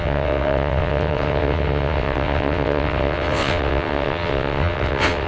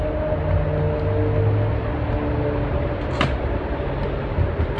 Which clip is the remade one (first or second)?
first